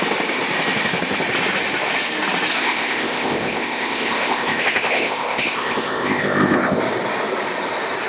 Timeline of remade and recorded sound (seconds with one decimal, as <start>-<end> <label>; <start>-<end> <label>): 0.0-2.5 recorded; 2.5-6.8 remade; 6.8-8.1 recorded